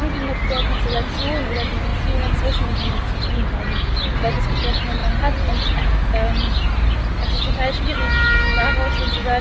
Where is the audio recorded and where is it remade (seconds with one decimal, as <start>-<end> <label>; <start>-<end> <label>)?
0.0-9.4 recorded